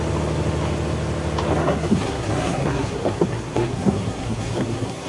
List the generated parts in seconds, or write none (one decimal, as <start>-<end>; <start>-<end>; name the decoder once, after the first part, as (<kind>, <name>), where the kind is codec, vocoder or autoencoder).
1.6-5.1 (codec, SNAC)